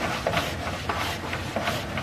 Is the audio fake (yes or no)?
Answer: no